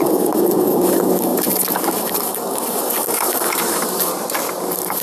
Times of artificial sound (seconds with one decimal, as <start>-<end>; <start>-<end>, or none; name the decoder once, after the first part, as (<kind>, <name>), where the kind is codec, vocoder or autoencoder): 0.0-4.1 (codec, DAC); 4.6-5.0